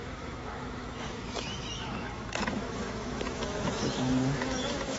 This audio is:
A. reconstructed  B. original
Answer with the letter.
A